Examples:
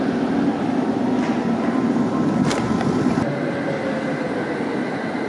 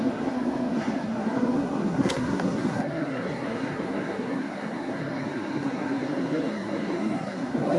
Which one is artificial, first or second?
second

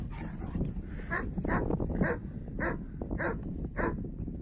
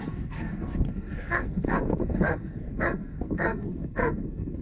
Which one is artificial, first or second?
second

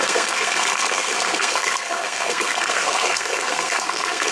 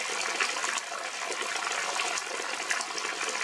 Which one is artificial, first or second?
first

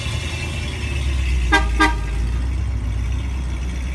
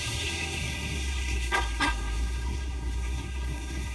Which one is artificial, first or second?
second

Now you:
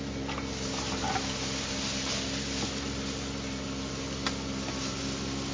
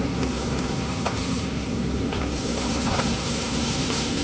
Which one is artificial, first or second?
second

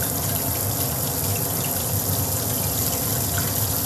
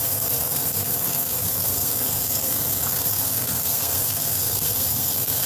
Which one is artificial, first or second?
second